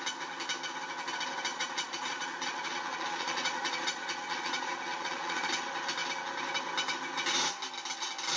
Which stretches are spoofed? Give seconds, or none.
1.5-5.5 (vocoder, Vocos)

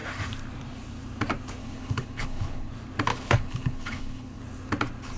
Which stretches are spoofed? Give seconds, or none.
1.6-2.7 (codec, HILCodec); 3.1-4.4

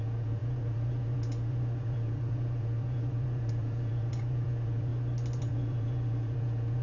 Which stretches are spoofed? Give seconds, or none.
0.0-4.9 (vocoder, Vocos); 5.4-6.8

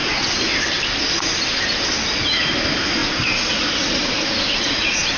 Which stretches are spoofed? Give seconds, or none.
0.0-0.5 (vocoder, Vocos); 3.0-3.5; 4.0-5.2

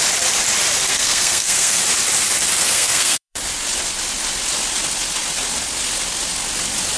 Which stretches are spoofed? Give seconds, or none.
0.9-1.8 (codec, SNAC); 2.6-3.4